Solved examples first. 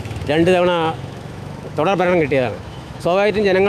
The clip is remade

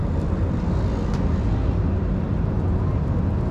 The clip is recorded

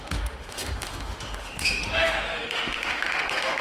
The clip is remade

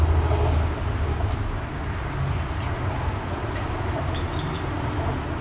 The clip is recorded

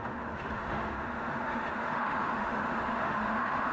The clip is remade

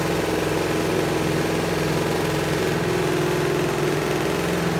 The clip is recorded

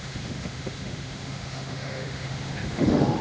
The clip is remade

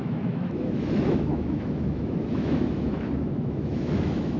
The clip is remade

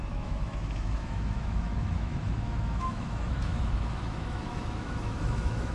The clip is remade